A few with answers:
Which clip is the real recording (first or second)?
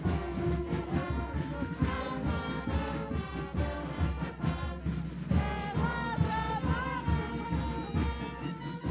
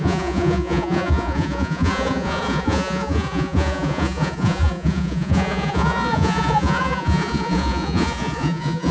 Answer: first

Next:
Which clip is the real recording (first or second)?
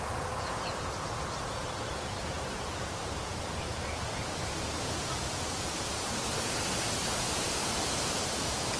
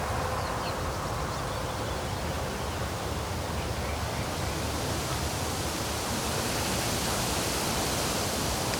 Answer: second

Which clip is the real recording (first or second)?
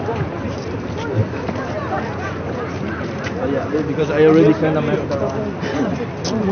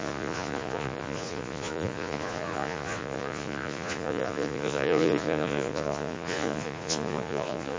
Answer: first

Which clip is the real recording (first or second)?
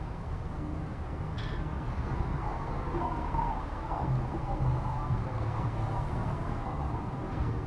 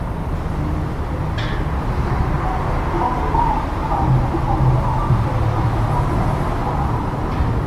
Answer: second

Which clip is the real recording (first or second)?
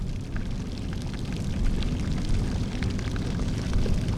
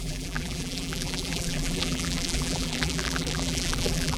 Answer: first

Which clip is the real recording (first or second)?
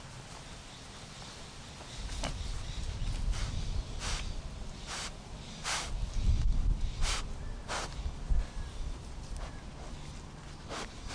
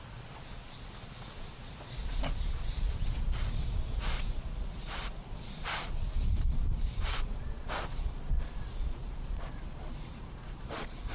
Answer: first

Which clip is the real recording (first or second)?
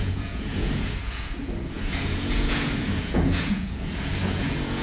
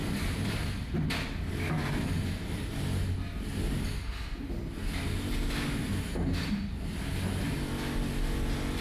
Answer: second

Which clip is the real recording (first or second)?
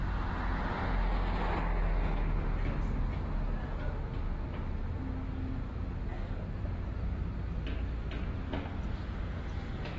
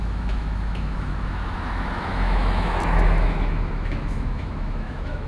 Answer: first